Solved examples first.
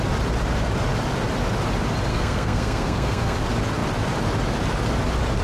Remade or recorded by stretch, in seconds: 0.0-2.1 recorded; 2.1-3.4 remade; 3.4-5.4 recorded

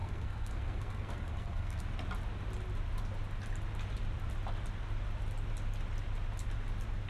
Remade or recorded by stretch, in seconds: 0.0-1.8 remade; 1.8-7.1 recorded